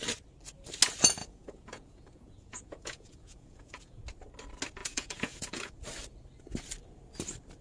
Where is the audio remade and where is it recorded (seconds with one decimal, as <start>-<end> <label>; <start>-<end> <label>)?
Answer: 0.0-1.2 recorded; 1.2-4.0 remade; 4.0-4.8 recorded; 4.8-5.7 remade; 5.7-7.6 recorded